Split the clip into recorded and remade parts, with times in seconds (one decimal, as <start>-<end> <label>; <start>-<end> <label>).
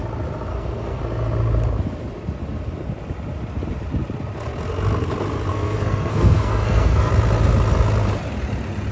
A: 0.0-0.5 recorded; 0.5-1.0 remade; 1.0-5.5 recorded; 5.5-7.1 remade; 7.1-8.9 recorded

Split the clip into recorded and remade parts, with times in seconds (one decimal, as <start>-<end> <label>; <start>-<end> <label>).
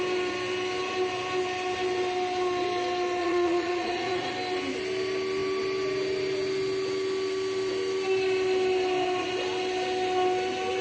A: 0.0-3.2 recorded; 3.2-4.3 remade; 4.3-10.8 recorded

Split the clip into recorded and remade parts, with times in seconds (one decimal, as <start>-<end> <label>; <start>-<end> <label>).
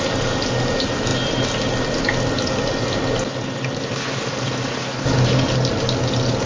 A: 0.0-6.5 recorded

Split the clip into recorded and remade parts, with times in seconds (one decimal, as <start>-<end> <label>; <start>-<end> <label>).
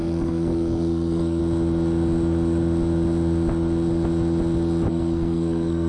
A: 0.0-1.4 remade; 1.4-4.9 recorded; 4.9-5.9 remade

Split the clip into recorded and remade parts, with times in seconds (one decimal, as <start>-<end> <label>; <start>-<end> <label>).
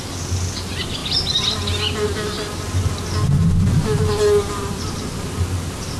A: 0.0-6.0 recorded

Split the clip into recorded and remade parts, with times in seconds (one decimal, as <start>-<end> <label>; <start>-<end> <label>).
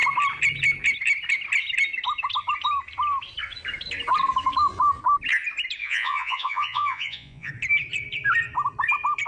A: 0.0-5.8 recorded; 5.8-7.5 remade; 7.5-9.3 recorded